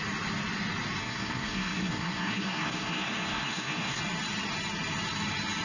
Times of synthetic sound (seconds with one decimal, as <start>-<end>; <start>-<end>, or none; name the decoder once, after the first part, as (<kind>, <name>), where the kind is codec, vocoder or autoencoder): 1.0-4.0 (codec, SNAC)